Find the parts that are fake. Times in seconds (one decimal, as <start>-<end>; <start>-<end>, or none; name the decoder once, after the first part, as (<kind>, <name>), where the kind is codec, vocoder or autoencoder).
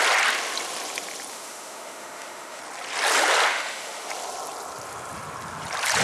1.3-2.6 (autoencoder, DAC-VAE); 3.5-4.1